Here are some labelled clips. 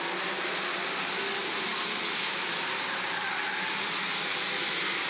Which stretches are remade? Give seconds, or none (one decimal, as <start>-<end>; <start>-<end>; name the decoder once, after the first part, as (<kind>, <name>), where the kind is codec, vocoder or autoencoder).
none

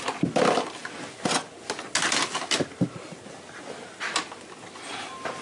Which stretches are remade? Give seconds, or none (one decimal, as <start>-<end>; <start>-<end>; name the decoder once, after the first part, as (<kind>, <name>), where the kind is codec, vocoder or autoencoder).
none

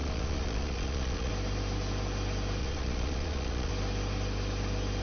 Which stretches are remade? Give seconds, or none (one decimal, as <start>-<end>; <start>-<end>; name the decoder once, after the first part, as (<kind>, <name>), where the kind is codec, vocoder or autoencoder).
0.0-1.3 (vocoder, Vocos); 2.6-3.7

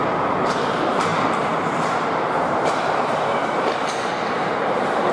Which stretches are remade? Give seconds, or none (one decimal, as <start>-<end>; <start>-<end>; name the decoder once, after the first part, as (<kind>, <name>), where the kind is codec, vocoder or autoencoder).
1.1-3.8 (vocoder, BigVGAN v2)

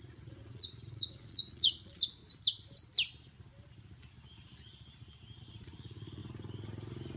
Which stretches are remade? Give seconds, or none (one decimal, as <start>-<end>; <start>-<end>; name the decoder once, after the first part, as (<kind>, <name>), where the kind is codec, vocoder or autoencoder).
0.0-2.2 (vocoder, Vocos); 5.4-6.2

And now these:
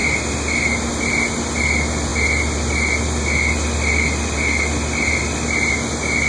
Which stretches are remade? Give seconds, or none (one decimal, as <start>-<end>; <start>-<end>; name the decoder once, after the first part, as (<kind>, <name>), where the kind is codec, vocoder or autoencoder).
none

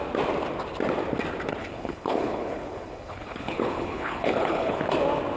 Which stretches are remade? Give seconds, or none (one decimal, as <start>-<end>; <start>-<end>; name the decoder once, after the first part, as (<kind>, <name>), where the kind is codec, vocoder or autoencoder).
1.6-4.8 (codec, HILCodec)